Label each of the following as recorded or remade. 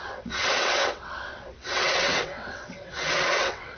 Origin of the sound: remade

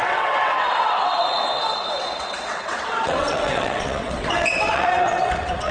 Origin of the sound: remade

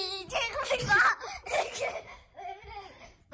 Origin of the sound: recorded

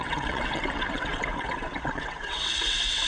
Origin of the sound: remade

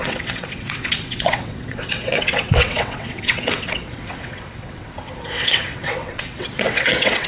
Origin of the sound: remade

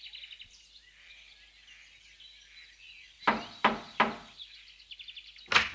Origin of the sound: recorded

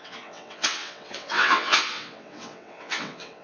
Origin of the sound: remade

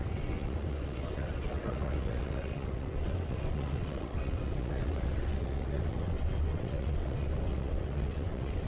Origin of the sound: remade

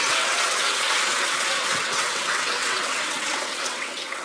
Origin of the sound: remade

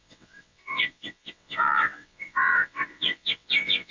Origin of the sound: remade